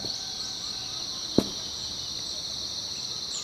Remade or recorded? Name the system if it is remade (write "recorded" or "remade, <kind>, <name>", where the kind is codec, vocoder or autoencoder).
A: recorded